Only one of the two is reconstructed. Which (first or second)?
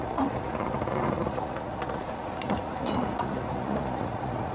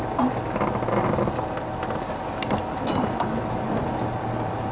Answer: first